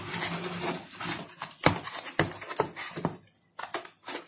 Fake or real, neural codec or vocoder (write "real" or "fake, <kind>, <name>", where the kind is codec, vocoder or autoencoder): real